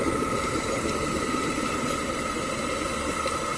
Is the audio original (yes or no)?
yes